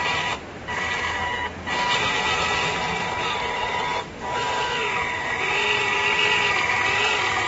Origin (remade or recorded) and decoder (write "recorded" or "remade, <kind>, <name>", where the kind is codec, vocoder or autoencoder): recorded